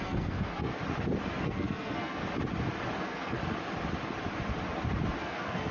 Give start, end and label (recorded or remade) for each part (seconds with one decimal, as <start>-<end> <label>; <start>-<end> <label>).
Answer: 0.0-0.7 remade; 0.7-1.3 recorded; 1.3-2.2 remade; 2.2-3.0 recorded; 3.0-3.4 remade; 3.4-5.2 recorded; 5.2-5.7 remade